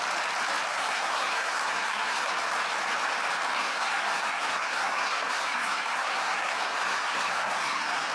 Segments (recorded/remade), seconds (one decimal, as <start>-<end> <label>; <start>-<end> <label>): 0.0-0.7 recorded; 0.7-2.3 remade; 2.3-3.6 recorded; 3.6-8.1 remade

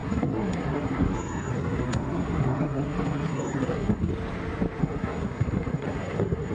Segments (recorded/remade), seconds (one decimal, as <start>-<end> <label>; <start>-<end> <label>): 0.0-4.1 remade; 4.1-4.8 recorded; 4.8-6.5 remade

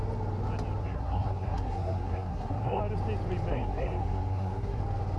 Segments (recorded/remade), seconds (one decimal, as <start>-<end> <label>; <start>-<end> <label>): 0.0-0.8 recorded; 0.8-2.8 remade; 2.8-3.5 recorded; 3.5-4.8 remade; 4.8-5.2 recorded

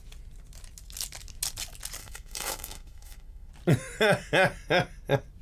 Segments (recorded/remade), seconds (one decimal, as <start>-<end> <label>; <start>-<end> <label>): 0.0-2.0 recorded; 2.0-3.5 remade; 3.5-5.4 recorded